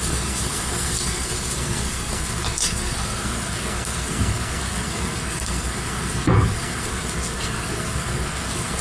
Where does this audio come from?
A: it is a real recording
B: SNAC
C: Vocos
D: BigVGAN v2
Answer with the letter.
B